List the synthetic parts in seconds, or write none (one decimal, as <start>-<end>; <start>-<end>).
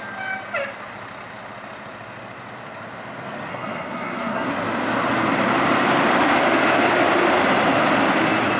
3.5-4.5